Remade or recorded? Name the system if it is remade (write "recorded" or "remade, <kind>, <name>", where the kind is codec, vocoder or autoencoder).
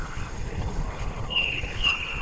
remade, codec, HILCodec